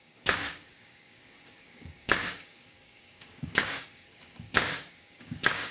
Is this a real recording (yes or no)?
no